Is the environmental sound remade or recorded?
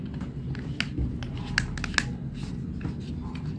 recorded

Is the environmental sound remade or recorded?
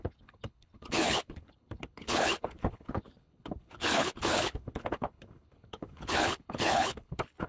remade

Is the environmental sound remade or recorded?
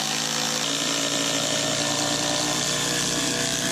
recorded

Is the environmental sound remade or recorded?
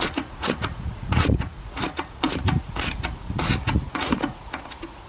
remade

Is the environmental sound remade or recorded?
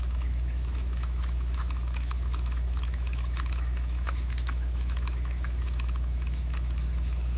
remade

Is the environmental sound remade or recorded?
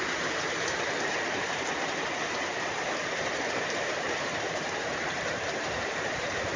remade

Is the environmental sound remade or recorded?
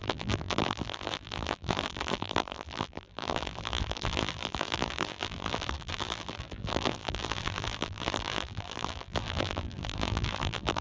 remade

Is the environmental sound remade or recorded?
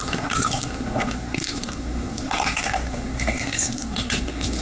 remade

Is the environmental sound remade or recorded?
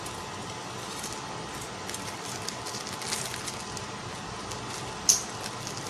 recorded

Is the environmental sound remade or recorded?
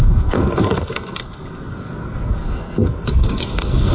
remade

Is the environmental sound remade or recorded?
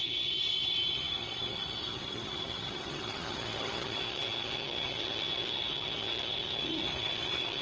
remade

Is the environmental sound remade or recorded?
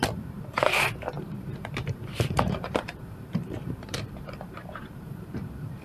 remade